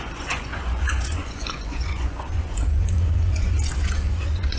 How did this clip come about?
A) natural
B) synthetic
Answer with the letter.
B